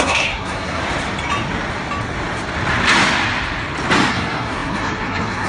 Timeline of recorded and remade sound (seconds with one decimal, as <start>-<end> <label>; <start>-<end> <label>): 0.0-0.8 remade; 0.8-4.1 recorded; 4.1-5.5 remade

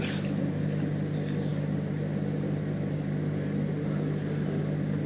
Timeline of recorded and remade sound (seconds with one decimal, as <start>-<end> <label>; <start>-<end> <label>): 0.0-5.1 recorded

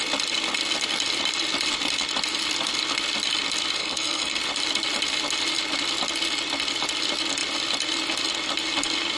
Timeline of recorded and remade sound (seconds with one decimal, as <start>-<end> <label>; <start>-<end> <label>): 0.0-3.8 recorded; 3.8-4.4 remade; 4.4-9.2 recorded

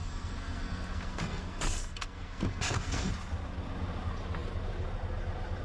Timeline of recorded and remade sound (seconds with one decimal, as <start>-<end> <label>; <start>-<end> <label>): 0.0-3.1 remade; 3.1-5.6 recorded

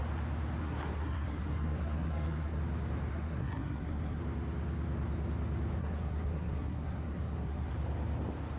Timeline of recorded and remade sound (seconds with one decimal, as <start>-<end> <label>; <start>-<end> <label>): 0.0-0.6 recorded; 0.6-2.6 remade; 2.6-3.1 recorded; 3.1-4.2 remade; 4.2-5.8 recorded; 5.8-7.7 remade; 7.7-8.6 recorded